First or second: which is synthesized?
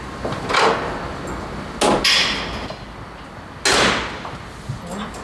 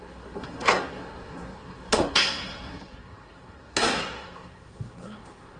second